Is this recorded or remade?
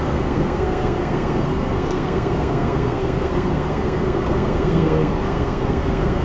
remade